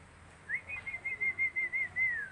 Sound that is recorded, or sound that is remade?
recorded